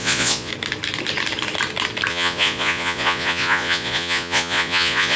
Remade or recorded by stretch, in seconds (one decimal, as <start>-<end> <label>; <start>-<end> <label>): 0.0-0.5 remade; 0.5-2.1 recorded; 2.1-5.2 remade